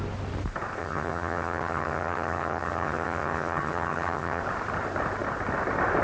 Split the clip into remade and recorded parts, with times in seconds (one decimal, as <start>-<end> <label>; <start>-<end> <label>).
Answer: 0.0-0.8 recorded; 0.8-4.4 remade; 4.4-6.0 recorded